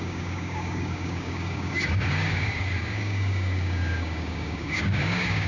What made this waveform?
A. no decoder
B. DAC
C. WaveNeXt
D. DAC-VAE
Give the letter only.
B